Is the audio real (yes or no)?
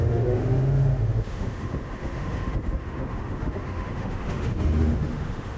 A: no